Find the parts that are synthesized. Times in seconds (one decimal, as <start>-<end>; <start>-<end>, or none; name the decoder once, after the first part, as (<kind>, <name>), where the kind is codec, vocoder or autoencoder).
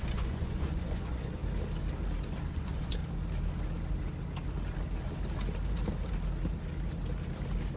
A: 0.0-1.4 (vocoder, Vocos); 2.5-3.0